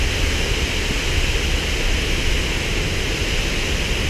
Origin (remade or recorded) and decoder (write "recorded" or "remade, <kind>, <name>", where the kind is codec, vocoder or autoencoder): recorded